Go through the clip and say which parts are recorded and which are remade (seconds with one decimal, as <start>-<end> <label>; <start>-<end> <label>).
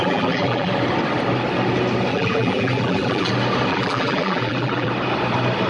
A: 0.0-0.7 remade; 0.7-2.1 recorded; 2.1-3.3 remade; 3.3-3.7 recorded; 3.7-4.9 remade; 4.9-5.7 recorded